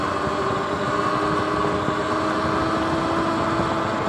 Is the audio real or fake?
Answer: real